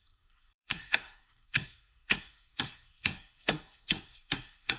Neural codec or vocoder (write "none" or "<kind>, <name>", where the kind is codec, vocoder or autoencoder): codec, SNAC